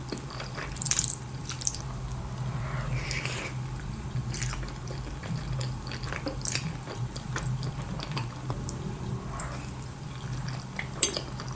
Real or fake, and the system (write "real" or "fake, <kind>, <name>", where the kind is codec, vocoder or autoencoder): fake, vocoder, BigVGAN v2